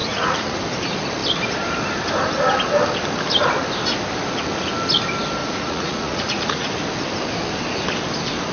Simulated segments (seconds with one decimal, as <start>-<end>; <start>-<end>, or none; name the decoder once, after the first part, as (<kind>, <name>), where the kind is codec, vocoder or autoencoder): 0.0-0.6 (vocoder, Vocos); 5.4-6.7